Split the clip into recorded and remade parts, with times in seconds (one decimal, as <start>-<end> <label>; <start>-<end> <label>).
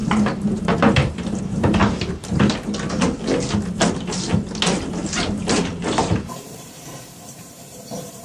0.0-1.8 remade; 1.8-5.4 recorded; 5.4-8.2 remade